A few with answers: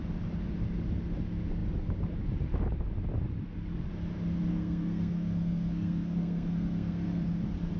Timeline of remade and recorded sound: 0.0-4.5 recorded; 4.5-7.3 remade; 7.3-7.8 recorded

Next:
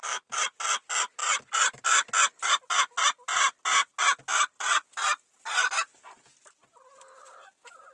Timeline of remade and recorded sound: 0.0-1.2 recorded; 1.2-2.1 remade; 2.1-7.9 recorded

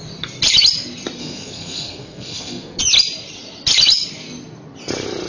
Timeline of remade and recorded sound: 0.0-1.2 recorded; 1.2-2.8 remade; 2.8-5.3 recorded

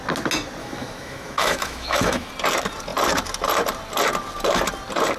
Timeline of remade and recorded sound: 0.0-0.6 recorded; 0.6-2.3 remade; 2.3-5.2 recorded